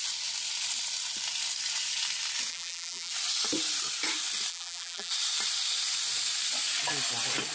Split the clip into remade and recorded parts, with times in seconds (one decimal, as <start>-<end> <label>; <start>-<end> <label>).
0.0-2.5 recorded; 2.5-3.1 remade; 3.1-4.5 recorded; 4.5-5.1 remade; 5.1-7.5 recorded